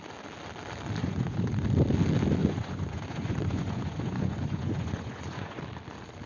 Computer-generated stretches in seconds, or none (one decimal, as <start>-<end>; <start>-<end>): 1.0-1.5; 2.4-5.6